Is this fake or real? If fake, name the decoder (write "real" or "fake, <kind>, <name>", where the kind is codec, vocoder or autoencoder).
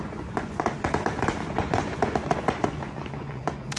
fake, vocoder, Vocos